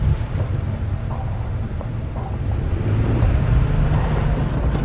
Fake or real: fake